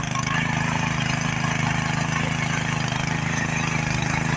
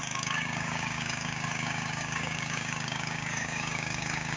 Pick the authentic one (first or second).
first